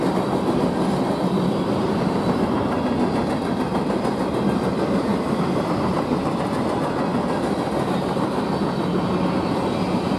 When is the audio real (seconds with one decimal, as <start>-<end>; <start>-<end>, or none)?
0.0-10.2

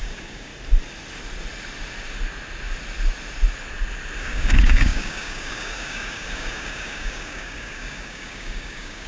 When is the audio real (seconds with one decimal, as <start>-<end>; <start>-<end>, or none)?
0.5-4.2

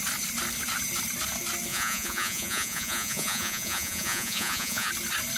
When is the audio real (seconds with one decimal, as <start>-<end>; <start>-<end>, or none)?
0.0-1.7; 4.9-5.4

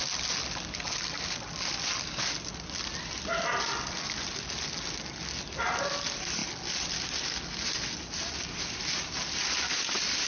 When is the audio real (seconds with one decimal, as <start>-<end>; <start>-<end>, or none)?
0.0-10.3

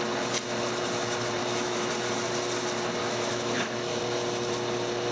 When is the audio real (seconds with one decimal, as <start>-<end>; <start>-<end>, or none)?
0.0-1.4; 1.9-3.0; 4.0-5.1

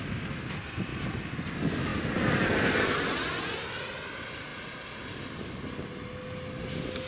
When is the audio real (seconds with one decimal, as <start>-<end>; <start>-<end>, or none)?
0.0-7.1